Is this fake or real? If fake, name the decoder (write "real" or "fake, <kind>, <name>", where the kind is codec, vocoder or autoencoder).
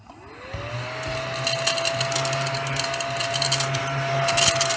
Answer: real